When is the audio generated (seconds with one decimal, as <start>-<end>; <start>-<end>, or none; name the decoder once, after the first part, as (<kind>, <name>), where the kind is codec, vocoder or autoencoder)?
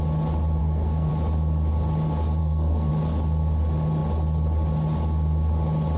0.6-1.1 (codec, SNAC); 2.4-2.9